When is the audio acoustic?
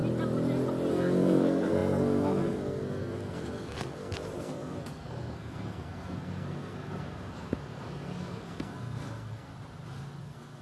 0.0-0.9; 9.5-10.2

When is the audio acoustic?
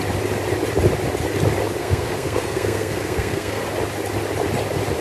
0.0-1.8; 3.6-5.0